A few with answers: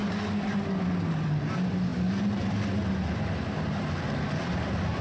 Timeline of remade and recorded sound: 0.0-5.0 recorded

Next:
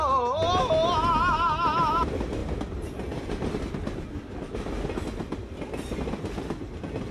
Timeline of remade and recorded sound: 0.0-7.1 recorded

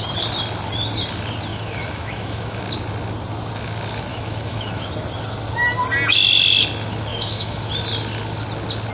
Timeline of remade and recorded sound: 0.0-1.5 recorded; 1.5-2.6 remade; 2.6-4.1 recorded; 4.1-4.9 remade; 4.9-7.1 recorded; 7.1-7.7 remade; 7.7-8.9 recorded

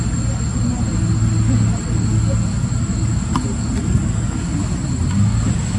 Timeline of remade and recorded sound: 0.0-5.8 recorded

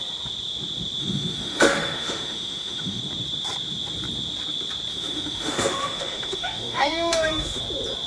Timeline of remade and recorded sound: 0.0-1.0 recorded; 1.0-3.0 remade; 3.0-4.9 recorded; 4.9-7.6 remade; 7.6-8.1 recorded

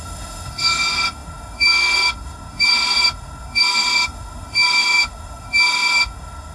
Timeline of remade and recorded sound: 0.0-6.5 remade